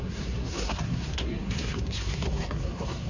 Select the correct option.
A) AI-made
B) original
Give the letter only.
A